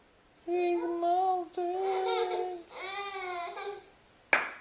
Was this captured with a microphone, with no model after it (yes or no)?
yes